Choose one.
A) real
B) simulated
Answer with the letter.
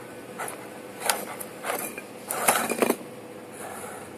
A